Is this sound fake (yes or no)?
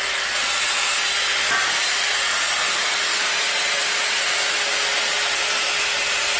no